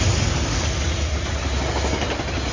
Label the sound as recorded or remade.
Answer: recorded